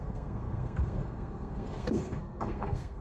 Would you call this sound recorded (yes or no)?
no